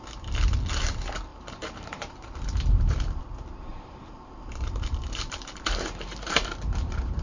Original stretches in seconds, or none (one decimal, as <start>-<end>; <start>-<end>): 0.0-1.3; 3.2-3.7